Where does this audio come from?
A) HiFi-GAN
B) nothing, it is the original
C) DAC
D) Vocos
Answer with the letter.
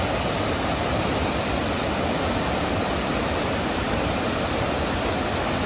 B